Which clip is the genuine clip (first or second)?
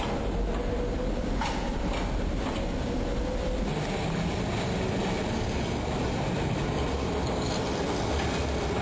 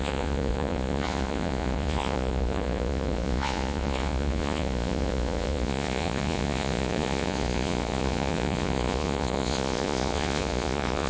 first